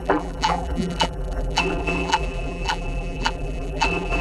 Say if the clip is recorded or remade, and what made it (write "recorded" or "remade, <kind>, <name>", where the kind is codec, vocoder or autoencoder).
remade, vocoder, BigVGAN v2